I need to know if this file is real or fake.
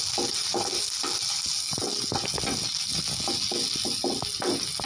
real